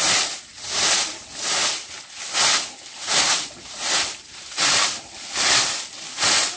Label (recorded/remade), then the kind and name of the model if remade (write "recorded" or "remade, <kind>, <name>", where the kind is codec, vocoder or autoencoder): recorded